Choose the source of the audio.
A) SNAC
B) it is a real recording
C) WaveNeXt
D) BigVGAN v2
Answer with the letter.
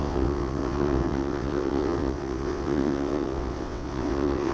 C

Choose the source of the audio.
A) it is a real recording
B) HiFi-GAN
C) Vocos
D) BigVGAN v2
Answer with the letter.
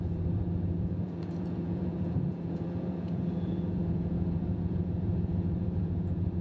C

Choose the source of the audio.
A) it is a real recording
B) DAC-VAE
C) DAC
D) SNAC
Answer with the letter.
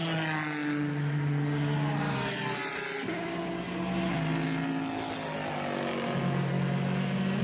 A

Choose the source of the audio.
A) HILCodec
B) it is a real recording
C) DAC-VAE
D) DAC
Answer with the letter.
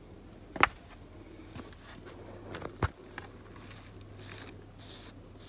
B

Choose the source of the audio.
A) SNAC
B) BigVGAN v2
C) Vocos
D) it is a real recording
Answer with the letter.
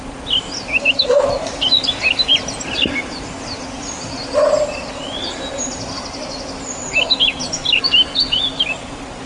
D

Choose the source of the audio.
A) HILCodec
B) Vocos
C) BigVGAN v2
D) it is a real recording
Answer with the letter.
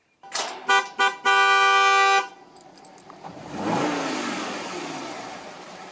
D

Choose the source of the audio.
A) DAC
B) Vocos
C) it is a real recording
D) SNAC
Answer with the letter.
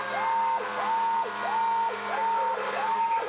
C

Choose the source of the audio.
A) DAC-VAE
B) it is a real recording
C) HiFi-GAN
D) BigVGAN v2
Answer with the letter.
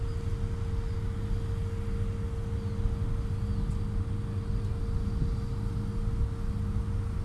B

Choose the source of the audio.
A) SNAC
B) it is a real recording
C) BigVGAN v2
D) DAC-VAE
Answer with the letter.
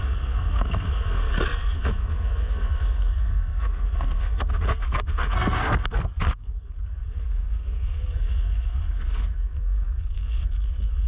A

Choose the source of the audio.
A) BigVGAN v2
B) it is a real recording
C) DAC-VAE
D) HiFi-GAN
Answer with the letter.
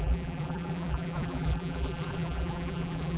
A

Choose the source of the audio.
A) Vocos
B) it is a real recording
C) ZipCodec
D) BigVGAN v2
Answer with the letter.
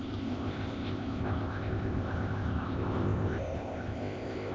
C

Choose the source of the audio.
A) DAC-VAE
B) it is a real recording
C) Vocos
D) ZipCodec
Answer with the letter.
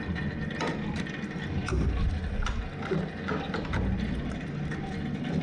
B